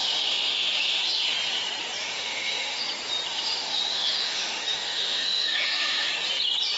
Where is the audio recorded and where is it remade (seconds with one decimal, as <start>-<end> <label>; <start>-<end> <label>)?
0.0-1.0 remade; 1.0-2.0 recorded; 2.0-2.8 remade; 2.8-3.3 recorded; 3.3-6.1 remade; 6.1-6.8 recorded